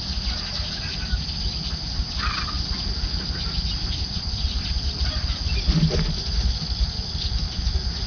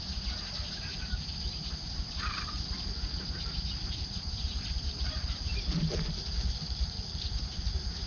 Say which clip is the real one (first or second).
first